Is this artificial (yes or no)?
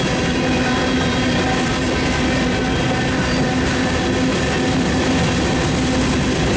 no